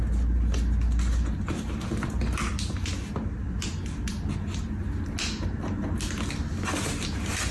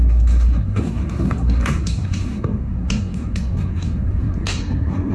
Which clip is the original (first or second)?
first